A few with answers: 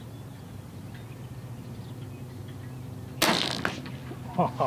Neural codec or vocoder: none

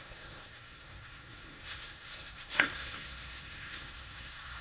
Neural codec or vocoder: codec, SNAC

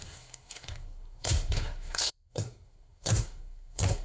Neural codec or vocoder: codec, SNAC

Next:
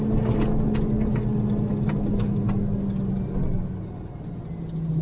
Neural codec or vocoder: none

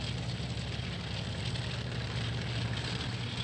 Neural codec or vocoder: none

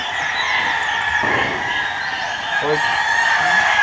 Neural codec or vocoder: none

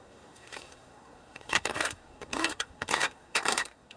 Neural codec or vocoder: codec, SNAC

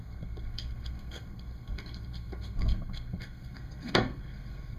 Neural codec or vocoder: codec, SNAC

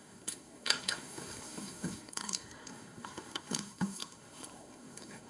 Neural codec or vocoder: codec, SNAC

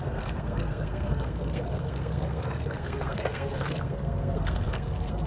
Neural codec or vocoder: codec, SNAC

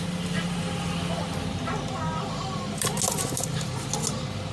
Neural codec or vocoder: none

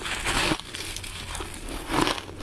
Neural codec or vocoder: none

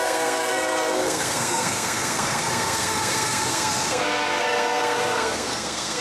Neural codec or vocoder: codec, SNAC